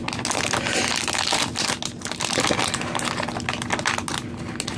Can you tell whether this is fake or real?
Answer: real